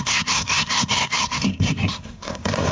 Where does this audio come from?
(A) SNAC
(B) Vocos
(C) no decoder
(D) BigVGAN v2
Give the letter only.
A